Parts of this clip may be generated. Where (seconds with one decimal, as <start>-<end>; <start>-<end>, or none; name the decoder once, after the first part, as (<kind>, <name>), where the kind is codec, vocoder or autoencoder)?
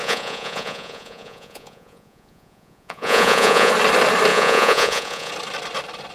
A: 0.0-3.7 (vocoder, Vocos); 4.3-5.3